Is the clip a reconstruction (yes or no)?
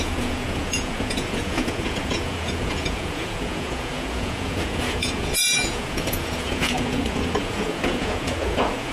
yes